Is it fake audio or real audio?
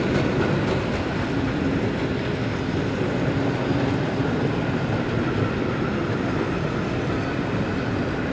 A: real